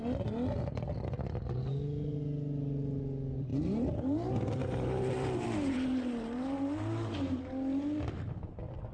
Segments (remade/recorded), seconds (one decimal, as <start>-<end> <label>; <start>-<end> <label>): 0.0-3.5 recorded; 3.5-7.4 remade; 7.4-8.9 recorded